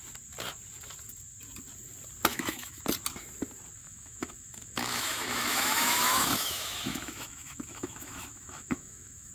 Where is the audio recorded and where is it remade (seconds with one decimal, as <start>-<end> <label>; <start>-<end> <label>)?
0.0-2.3 recorded; 2.3-2.8 remade; 2.8-3.8 recorded; 3.8-9.3 remade